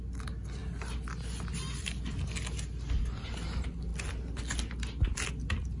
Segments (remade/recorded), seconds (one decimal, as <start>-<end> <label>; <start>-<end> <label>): 0.0-5.8 recorded